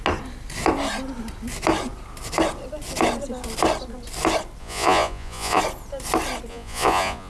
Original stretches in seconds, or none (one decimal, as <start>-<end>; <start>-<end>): 0.0-4.6; 5.6-6.5